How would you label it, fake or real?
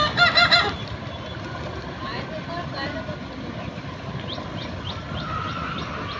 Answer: real